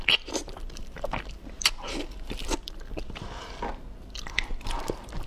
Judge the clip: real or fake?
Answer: real